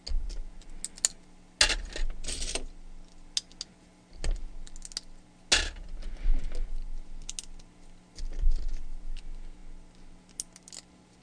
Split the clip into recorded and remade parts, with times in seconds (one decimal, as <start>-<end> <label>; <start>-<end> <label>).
0.0-11.2 recorded